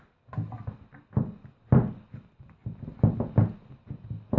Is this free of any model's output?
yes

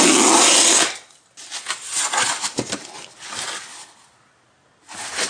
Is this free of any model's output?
yes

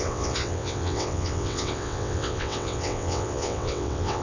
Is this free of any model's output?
no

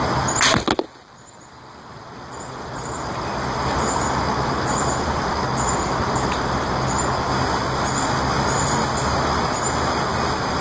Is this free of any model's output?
yes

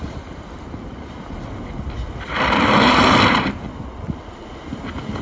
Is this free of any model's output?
yes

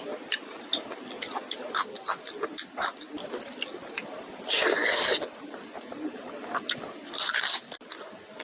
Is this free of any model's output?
yes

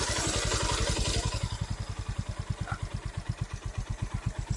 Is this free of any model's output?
yes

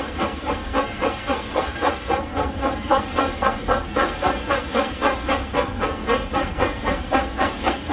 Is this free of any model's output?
no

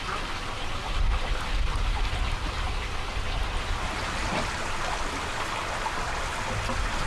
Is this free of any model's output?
yes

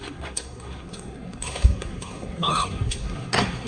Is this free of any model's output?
no